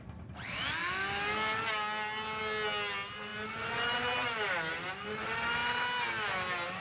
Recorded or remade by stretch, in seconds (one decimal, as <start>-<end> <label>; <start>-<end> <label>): 0.0-6.8 recorded